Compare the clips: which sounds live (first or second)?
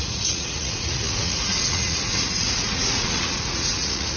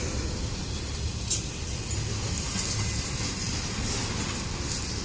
second